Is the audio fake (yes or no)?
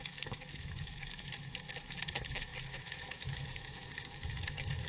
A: yes